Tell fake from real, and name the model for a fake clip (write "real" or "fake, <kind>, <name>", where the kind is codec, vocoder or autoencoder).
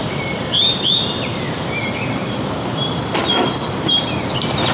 fake, vocoder, BigVGAN v2